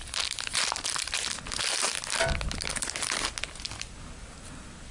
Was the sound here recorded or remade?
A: recorded